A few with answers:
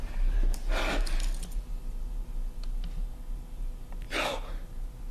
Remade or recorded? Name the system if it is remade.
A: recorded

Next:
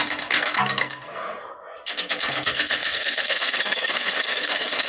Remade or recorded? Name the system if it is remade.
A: remade, codec, SNAC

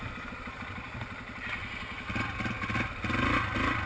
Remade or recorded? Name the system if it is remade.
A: recorded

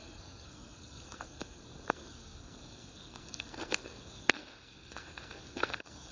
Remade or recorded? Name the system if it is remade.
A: remade, codec, SNAC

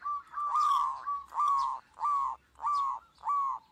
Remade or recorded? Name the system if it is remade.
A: recorded